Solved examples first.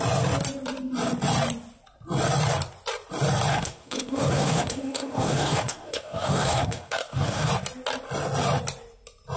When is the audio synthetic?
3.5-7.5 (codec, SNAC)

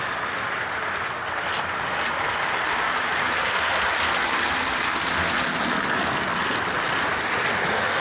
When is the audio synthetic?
none

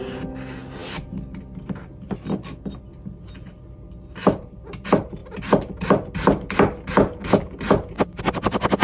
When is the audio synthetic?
none

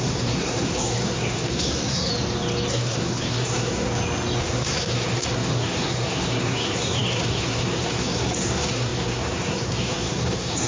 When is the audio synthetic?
0.0-2.1 (codec, SNAC); 2.7-3.9; 4.4-10.7

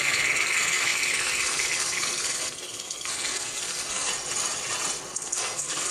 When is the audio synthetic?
0.0-4.1 (codec, SNAC); 5.1-5.9

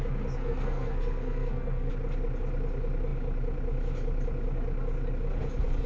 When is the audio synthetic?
0.4-1.9 (codec, SNAC)

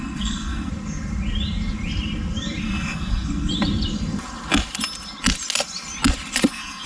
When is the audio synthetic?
0.0-0.7 (codec, SNAC); 2.6-3.5; 6.5-6.9

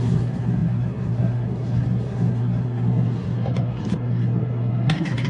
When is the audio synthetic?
0.0-5.3 (codec, SNAC)